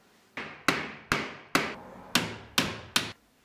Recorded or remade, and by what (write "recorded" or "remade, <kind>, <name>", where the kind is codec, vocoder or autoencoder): recorded